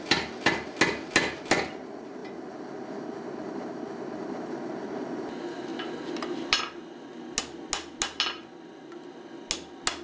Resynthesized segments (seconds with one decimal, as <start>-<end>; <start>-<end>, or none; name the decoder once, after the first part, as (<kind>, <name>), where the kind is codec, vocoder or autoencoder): none